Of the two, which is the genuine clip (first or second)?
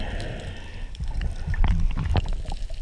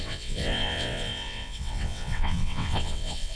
first